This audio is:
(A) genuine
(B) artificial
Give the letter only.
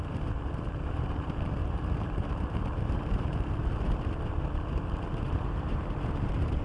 B